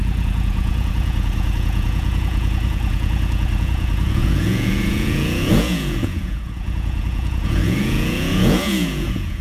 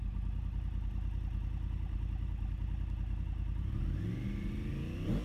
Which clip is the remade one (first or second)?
first